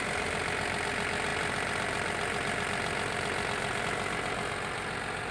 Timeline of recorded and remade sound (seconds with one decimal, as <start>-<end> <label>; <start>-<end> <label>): 0.0-5.3 recorded